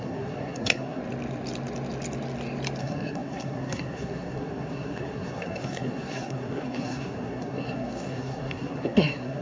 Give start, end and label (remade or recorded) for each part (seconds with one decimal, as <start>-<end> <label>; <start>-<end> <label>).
0.0-1.0 remade; 1.0-2.8 recorded; 2.8-9.4 remade